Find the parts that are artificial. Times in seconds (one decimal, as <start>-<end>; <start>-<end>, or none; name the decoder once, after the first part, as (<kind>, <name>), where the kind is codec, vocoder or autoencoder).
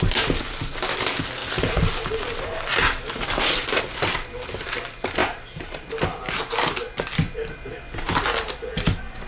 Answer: 1.4-3.8 (vocoder, BigVGAN v2); 5.2-5.8